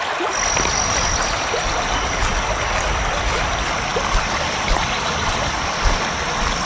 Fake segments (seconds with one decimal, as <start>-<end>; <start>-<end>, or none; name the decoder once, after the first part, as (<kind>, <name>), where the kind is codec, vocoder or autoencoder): none